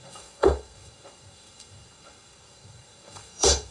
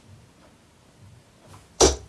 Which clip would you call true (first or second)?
second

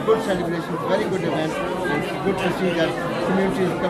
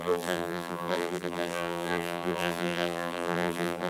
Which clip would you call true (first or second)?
first